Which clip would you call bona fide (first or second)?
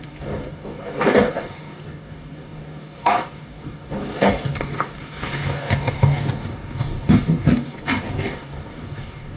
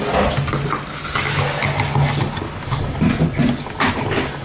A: second